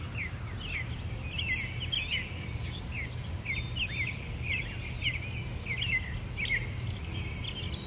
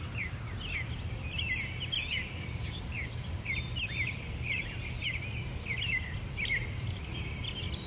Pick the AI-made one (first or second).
second